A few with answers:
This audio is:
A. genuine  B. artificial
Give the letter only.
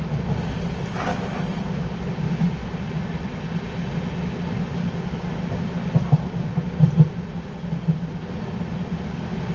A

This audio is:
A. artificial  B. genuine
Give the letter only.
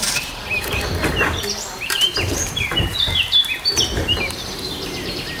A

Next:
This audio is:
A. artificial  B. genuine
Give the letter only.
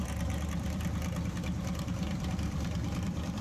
A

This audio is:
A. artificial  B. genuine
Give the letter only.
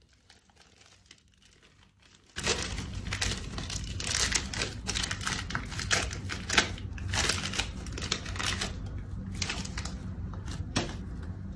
B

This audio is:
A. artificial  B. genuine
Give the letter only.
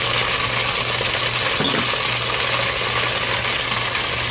B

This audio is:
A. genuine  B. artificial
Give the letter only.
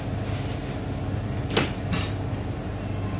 A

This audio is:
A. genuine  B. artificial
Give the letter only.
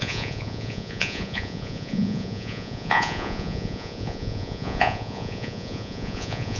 B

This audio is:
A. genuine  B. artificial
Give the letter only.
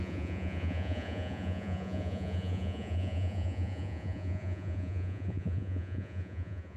B